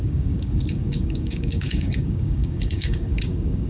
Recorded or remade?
remade